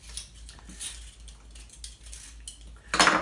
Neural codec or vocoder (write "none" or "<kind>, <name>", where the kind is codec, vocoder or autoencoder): none